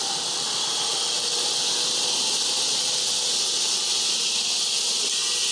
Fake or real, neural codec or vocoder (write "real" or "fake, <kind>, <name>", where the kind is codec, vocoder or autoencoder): real